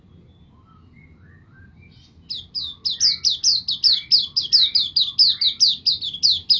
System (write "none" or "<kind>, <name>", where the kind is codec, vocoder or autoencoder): none